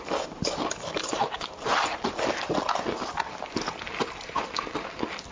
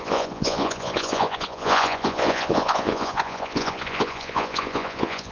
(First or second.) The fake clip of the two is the second